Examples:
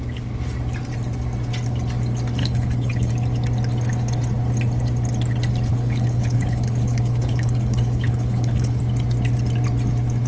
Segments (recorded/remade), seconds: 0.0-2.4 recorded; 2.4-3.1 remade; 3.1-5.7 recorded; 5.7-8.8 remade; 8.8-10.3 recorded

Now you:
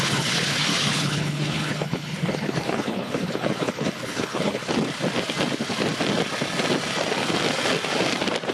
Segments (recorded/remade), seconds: 0.0-4.6 remade; 4.6-8.5 recorded

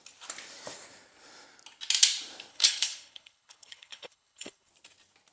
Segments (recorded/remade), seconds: 0.0-2.5 recorded; 2.5-4.7 remade; 4.7-5.3 recorded

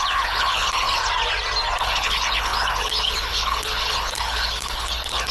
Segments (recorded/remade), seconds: 0.0-1.0 remade; 1.0-1.8 recorded; 1.8-5.3 remade

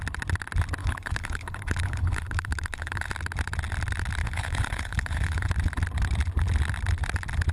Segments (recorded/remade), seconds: 0.0-0.8 recorded; 0.8-3.1 remade; 3.1-4.2 recorded; 4.2-5.5 remade; 5.5-7.5 recorded

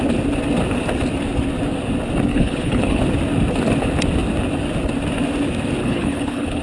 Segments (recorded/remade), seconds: 0.0-2.3 recorded; 2.3-3.0 remade; 3.0-5.8 recorded; 5.8-6.6 remade

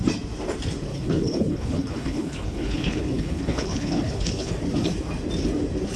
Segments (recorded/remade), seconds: 0.0-0.9 recorded; 0.9-4.5 remade; 4.5-6.0 recorded

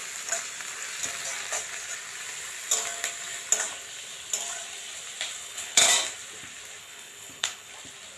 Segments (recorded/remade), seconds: 0.0-5.4 recorded; 5.4-5.9 remade; 5.9-6.8 recorded; 6.8-7.7 remade; 7.7-8.2 recorded